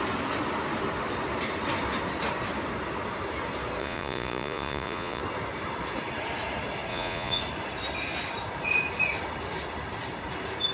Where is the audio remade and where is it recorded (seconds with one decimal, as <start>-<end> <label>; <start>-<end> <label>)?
0.0-3.8 recorded; 3.8-5.2 remade; 5.2-6.9 recorded; 6.9-7.4 remade; 7.4-10.7 recorded

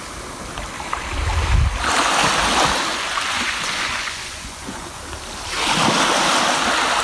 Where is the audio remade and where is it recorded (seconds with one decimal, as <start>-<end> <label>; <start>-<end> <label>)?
0.0-2.9 recorded; 2.9-5.0 remade; 5.0-7.0 recorded